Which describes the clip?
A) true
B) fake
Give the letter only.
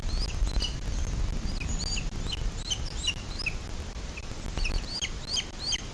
A